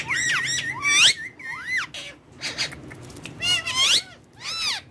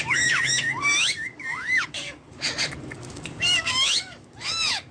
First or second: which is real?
first